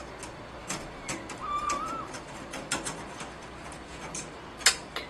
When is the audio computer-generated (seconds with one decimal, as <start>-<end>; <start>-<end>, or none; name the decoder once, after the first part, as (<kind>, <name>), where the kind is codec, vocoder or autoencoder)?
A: 0.6-3.0 (vocoder, BigVGAN v2)